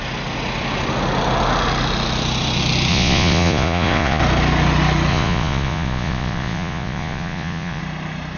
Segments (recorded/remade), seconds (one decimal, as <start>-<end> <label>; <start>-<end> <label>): 0.0-2.9 recorded; 2.9-4.2 remade; 4.2-5.1 recorded; 5.1-7.8 remade; 7.8-8.4 recorded